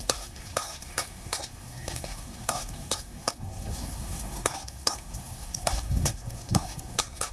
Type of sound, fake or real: fake